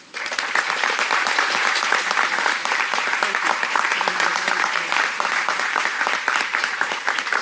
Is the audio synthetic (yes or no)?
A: yes